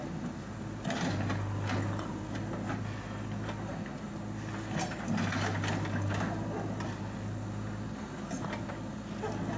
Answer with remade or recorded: recorded